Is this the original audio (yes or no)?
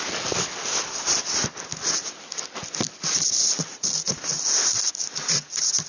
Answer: yes